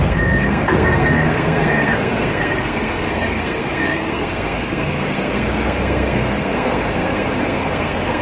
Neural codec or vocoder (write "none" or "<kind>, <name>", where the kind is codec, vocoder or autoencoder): codec, SNAC